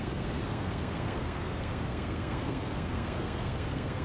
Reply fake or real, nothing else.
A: fake